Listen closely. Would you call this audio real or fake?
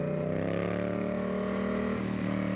real